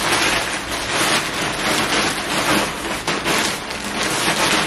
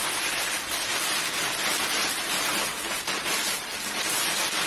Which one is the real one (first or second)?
first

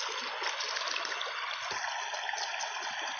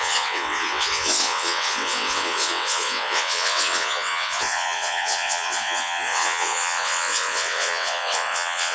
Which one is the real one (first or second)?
first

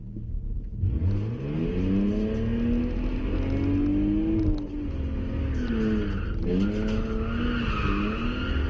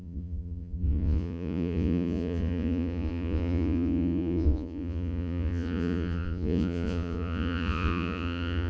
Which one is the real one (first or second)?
first